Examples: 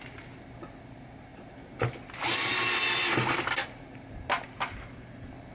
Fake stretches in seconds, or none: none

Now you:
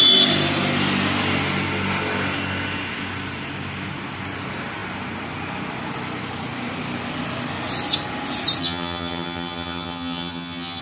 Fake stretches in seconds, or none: 8.6-10.8 (vocoder, HiFi-GAN)